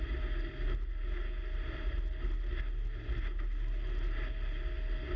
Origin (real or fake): real